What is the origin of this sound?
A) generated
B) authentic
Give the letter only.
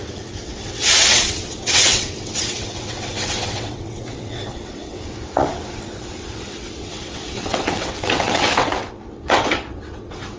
A